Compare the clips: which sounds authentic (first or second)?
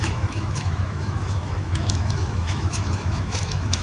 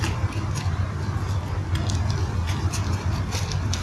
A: second